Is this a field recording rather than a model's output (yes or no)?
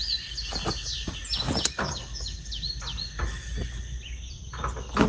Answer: yes